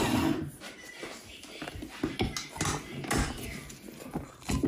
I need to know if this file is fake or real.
real